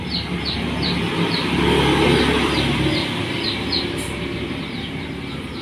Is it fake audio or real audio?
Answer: fake